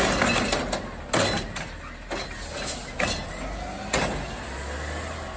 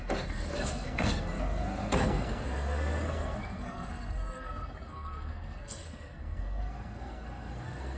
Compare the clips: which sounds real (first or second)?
first